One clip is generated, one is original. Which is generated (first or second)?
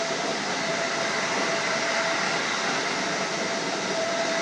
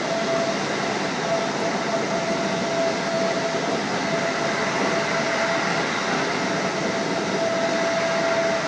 first